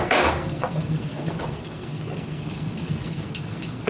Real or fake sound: fake